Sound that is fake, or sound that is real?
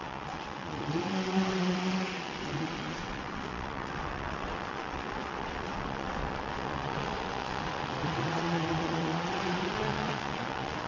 fake